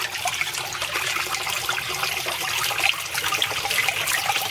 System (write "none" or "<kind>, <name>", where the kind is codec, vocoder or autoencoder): vocoder, BigVGAN v2